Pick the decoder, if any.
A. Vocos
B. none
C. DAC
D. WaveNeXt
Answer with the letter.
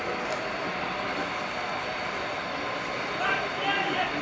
B